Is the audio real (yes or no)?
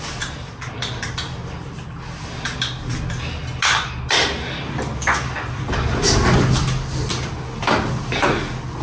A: yes